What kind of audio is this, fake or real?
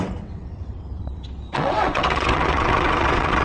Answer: fake